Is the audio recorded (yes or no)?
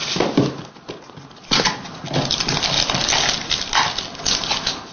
yes